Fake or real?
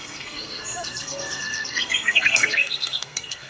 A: fake